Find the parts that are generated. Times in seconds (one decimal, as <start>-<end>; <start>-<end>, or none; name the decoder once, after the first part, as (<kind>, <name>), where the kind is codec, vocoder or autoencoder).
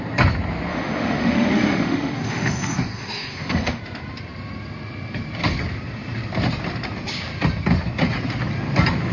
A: 0.7-3.8 (autoencoder, DAC-VAE)